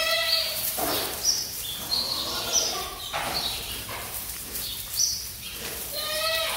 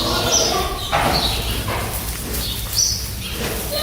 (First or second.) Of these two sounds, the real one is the second